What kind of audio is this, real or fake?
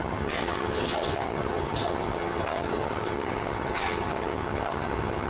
fake